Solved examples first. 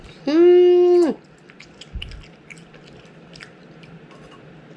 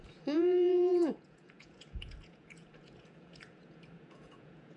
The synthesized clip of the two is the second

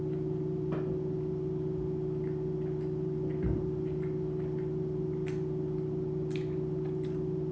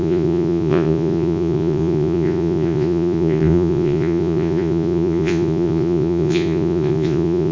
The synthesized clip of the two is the second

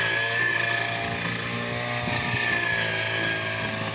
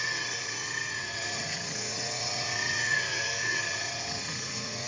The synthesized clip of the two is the second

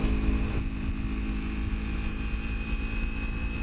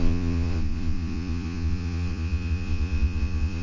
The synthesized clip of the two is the second